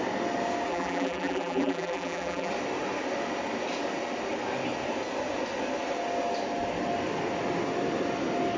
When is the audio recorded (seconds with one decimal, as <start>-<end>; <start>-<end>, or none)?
0.0-0.7; 2.5-8.6